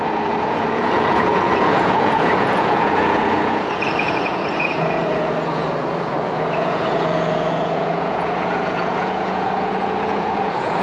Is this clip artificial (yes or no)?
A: yes